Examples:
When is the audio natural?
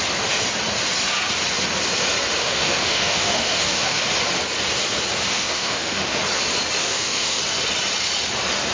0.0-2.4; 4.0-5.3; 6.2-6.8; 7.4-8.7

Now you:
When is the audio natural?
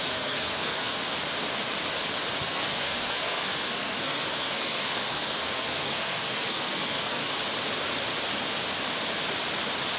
1.0-2.4; 7.2-10.0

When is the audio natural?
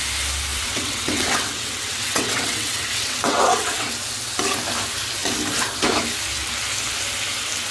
0.0-0.5; 3.9-7.7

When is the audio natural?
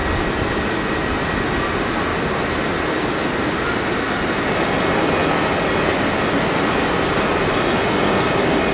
0.0-2.1; 2.9-8.7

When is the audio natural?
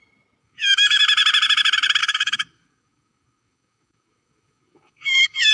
0.0-0.4; 1.0-2.0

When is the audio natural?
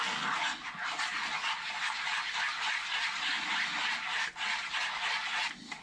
0.0-5.8